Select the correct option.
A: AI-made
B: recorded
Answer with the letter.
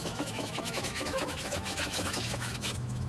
A